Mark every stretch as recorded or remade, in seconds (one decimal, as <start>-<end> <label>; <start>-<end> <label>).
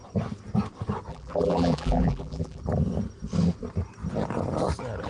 0.0-1.1 recorded; 1.1-2.6 remade; 2.6-5.1 recorded